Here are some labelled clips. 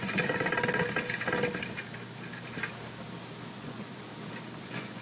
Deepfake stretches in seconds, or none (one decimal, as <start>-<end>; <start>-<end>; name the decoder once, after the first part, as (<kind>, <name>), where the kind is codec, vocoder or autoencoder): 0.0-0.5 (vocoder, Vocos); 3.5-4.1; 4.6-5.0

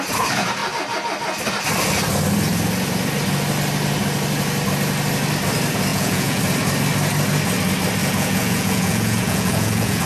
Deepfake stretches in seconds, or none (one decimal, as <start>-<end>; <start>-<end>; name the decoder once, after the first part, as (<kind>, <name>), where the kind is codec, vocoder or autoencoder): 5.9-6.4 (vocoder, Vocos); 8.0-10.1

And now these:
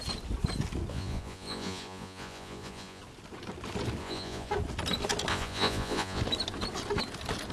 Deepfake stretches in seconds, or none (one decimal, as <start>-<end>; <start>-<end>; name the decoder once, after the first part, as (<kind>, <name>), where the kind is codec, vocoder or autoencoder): 0.9-3.0 (vocoder, Vocos); 4.0-4.5; 5.3-6.2

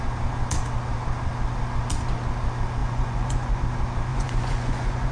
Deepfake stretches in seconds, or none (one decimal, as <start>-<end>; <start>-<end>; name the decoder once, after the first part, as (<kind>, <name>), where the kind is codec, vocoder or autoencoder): 2.8-3.6 (vocoder, Vocos); 4.1-5.1

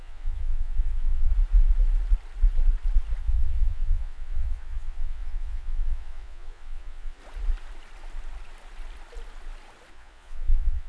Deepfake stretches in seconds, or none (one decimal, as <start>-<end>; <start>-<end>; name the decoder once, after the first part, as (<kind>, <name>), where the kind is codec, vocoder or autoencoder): 0.0-1.3 (vocoder, Vocos); 3.2-7.2; 9.9-10.9

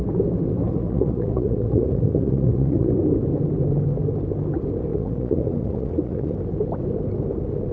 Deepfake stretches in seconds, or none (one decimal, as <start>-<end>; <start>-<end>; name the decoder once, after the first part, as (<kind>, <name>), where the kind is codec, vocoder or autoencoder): 0.7-2.9 (vocoder, Vocos); 4.9-6.3

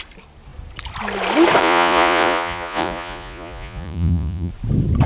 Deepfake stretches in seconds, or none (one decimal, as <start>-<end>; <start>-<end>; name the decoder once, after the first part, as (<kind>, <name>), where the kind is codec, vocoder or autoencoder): 1.6-4.5 (vocoder, Vocos)